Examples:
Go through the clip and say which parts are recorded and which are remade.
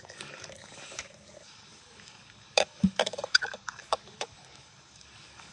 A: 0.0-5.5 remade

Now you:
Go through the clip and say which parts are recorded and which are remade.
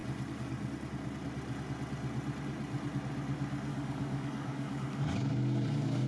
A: 0.0-3.7 recorded; 3.7-6.1 remade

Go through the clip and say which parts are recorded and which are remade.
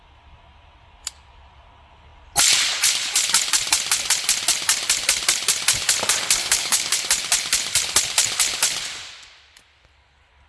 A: 0.0-6.4 recorded; 6.4-7.0 remade; 7.0-10.5 recorded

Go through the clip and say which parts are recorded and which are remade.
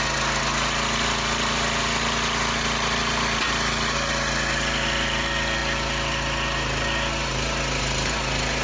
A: 0.0-8.6 recorded